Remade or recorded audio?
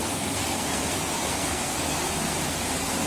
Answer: remade